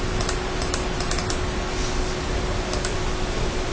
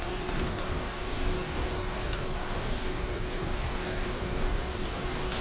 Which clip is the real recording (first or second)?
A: first